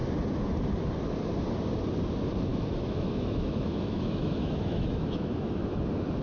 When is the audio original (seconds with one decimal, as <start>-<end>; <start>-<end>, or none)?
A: 0.0-2.5; 5.8-6.2